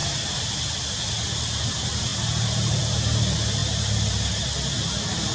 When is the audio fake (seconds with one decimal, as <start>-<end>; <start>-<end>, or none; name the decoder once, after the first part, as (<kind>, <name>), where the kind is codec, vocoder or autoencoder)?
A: none